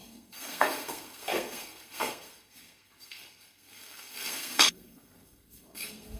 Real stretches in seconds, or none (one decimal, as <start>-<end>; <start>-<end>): none